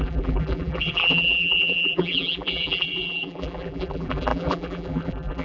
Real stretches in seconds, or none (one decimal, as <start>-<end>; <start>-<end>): none